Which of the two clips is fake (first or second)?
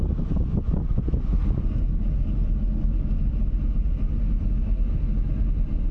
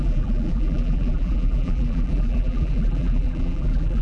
second